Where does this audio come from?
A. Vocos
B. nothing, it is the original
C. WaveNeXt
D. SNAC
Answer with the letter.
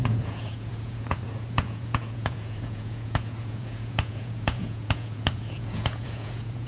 A